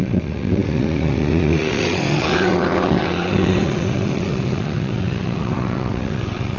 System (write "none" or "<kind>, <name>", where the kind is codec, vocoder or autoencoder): vocoder, WaveNeXt